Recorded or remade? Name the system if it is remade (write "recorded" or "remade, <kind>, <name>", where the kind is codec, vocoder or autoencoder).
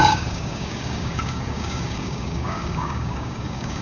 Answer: remade, codec, DAC